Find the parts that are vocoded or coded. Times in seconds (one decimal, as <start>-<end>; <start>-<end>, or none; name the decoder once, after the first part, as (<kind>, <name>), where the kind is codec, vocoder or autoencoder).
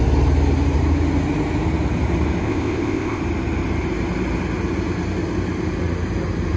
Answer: 2.4-3.2 (codec, ZipCodec)